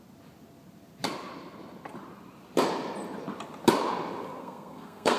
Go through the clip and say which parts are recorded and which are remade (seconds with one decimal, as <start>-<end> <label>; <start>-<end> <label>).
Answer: 0.0-4.4 recorded; 4.4-5.2 remade